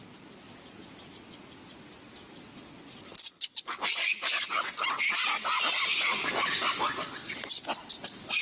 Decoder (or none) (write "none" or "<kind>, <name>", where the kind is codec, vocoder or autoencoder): none